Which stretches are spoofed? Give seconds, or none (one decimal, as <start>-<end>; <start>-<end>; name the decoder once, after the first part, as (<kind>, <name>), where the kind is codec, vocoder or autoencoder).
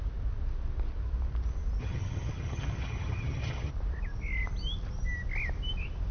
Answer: 1.8-3.7 (vocoder, HiFi-GAN)